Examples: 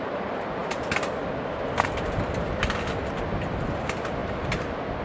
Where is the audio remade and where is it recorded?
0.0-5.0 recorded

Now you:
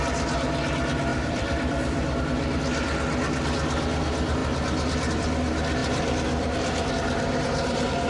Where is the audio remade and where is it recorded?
0.0-1.1 recorded; 1.1-2.2 remade; 2.2-5.8 recorded; 5.8-6.9 remade; 6.9-8.1 recorded

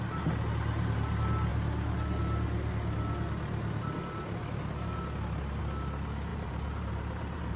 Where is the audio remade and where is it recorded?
0.0-6.3 recorded; 6.3-7.6 remade